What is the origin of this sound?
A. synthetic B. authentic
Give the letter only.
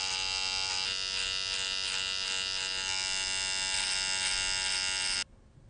B